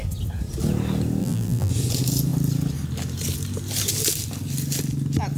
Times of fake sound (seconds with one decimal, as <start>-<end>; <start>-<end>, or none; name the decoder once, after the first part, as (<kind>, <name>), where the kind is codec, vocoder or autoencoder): 1.2-1.7 (vocoder, BigVGAN v2)